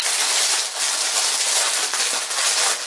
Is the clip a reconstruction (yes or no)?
no